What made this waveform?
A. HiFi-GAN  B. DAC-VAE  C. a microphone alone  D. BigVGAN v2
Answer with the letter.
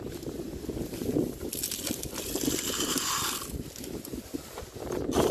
D